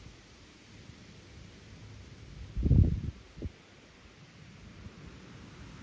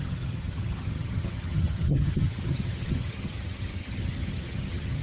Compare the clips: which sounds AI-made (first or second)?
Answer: second